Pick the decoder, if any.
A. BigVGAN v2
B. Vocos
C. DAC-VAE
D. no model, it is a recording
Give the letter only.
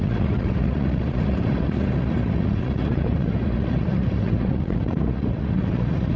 B